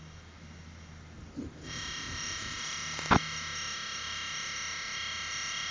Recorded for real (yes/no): yes